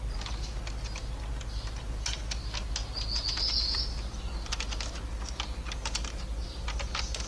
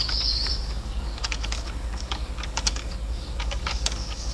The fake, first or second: second